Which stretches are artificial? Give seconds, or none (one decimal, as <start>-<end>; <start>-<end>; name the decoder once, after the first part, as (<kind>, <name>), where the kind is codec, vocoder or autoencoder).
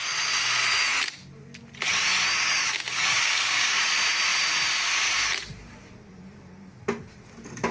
2.6-3.9 (codec, DAC)